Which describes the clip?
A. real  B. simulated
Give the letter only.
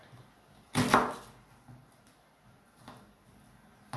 A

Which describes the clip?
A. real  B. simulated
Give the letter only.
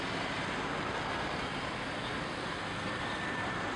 A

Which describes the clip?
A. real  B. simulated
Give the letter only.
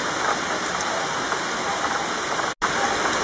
A